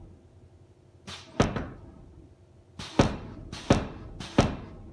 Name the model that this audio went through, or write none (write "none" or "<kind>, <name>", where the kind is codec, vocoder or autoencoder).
none